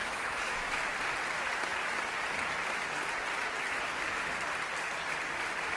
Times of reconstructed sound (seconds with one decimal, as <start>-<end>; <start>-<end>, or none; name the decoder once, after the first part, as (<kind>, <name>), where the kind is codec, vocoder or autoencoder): 0.0-0.8 (autoencoder, DAC-VAE)

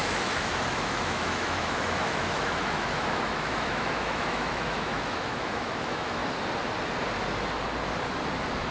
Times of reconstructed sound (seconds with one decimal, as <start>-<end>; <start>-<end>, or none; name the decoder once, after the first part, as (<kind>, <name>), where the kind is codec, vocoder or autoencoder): 0.0-6.2 (autoencoder, DAC-VAE)

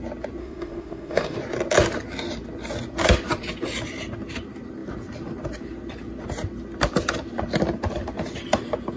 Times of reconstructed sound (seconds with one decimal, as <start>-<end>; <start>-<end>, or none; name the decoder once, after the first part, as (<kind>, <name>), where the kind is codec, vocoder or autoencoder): 0.4-1.4 (autoencoder, DAC-VAE)

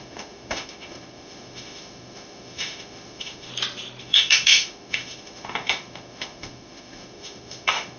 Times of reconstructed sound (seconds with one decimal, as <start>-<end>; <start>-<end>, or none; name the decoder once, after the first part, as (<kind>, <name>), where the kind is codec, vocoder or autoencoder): 0.0-3.5 (autoencoder, DAC-VAE); 4.0-8.0

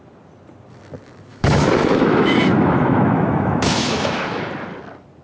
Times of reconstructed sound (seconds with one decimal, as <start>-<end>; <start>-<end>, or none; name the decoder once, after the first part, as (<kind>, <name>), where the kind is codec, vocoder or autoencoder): 1.3-4.4 (autoencoder, DAC-VAE)